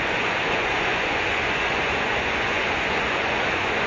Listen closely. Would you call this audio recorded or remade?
remade